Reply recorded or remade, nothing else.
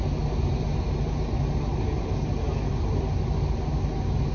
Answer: recorded